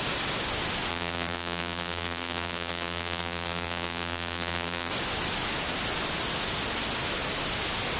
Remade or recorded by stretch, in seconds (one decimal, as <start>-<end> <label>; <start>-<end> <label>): 0.0-0.9 recorded; 0.9-4.9 remade; 4.9-8.0 recorded